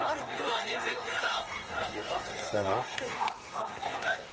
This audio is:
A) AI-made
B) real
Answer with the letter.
A